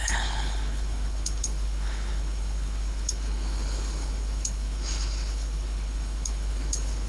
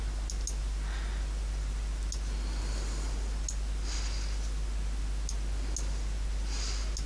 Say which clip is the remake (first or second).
first